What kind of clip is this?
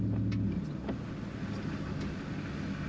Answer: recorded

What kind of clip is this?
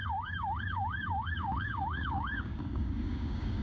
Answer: remade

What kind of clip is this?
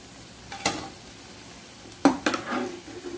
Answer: recorded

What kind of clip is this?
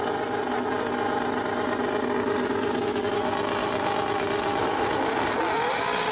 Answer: recorded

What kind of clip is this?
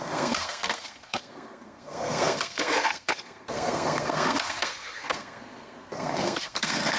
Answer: remade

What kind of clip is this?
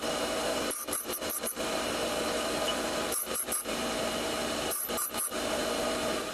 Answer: remade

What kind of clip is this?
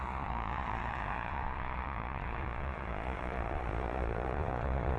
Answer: remade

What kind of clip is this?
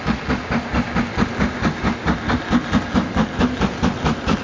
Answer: recorded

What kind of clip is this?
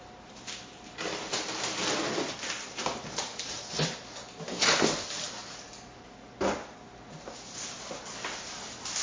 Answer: recorded